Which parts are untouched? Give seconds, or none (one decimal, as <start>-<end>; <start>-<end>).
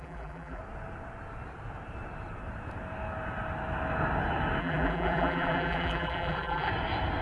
0.6-4.6; 6.7-7.2